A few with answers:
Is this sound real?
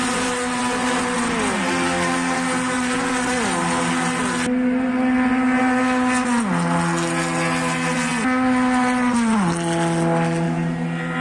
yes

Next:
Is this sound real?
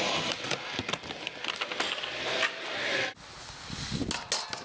yes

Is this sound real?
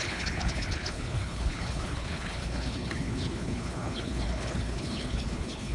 no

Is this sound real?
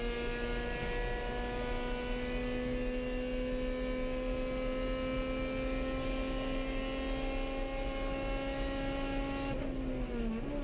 yes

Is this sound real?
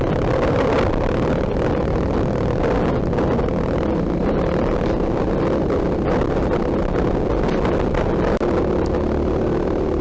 yes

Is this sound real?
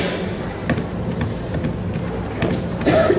yes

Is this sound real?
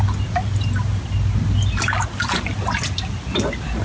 yes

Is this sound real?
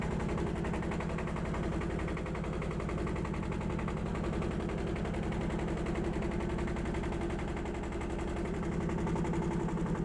yes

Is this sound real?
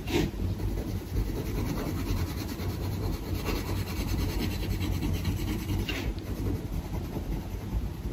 no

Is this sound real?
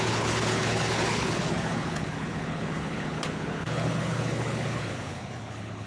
no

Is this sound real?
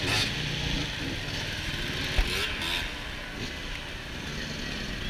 yes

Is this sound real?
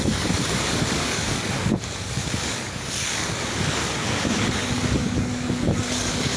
no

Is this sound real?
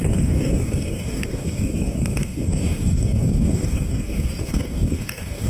no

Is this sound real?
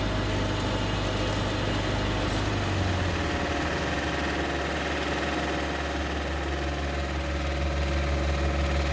yes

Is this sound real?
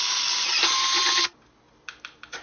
yes